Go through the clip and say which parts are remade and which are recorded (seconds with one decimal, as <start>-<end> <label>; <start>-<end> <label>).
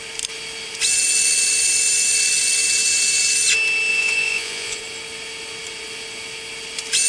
0.0-3.9 recorded; 3.9-4.8 remade; 4.8-7.1 recorded